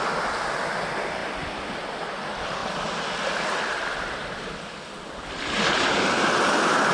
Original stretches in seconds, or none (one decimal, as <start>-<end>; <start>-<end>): 0.0-6.9